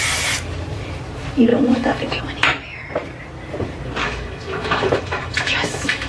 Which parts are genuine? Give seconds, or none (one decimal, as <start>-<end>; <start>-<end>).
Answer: 0.0-1.5; 2.2-4.0